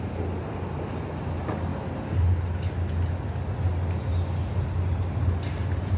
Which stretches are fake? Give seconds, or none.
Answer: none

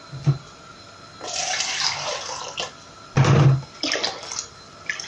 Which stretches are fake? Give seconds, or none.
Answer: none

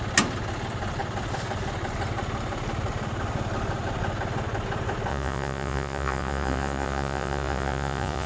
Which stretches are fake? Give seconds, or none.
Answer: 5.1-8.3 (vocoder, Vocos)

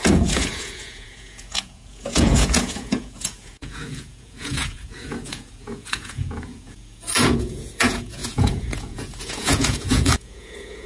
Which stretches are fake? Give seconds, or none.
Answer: 0.0-10.9 (vocoder, Vocos)

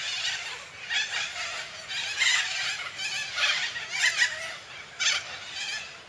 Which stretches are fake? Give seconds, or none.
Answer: none

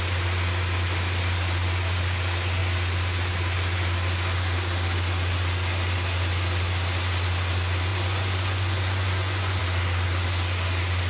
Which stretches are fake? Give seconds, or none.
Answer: 7.9-9.6 (vocoder, Vocos)

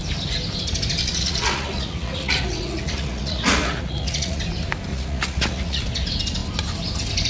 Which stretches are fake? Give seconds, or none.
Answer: 1.0-4.4 (vocoder, Vocos); 4.9-5.8